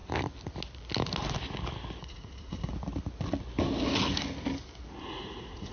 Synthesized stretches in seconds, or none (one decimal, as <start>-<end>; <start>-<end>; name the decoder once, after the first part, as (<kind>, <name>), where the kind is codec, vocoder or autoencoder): 2.0-2.7 (vocoder, Vocos); 5.0-5.7